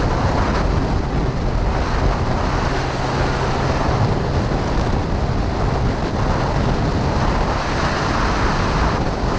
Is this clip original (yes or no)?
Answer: yes